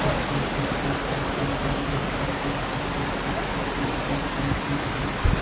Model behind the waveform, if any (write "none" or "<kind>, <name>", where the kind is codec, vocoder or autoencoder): none